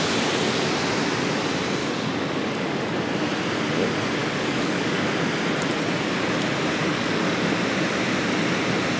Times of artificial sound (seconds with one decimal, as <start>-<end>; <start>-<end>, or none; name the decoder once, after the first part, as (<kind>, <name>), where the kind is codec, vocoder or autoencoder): 1.8-2.9 (codec, DAC); 4.2-5.1; 6.8-7.5